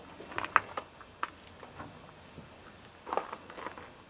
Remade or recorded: recorded